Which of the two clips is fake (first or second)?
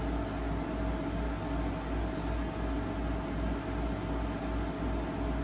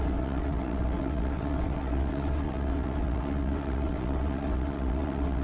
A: second